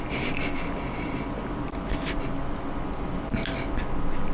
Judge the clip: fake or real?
real